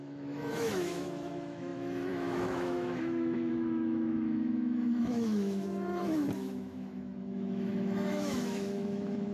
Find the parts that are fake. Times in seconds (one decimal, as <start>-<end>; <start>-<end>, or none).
0.0-9.3